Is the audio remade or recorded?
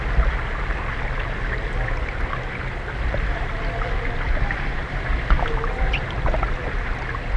recorded